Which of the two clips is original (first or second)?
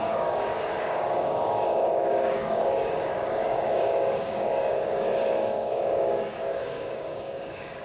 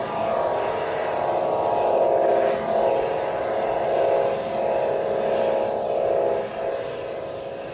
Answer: second